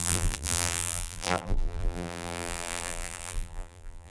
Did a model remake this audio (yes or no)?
yes